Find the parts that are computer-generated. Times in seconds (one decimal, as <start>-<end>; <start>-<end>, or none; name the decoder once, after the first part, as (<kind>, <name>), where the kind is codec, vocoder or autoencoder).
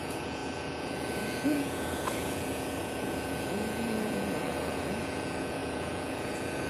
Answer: 0.0-6.7 (vocoder, Vocos)